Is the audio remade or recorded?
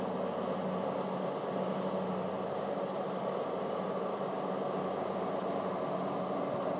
recorded